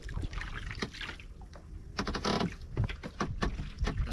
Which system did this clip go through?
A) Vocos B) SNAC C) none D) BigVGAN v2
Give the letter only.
C